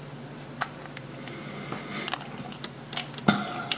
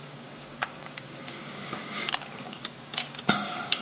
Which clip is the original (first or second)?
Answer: first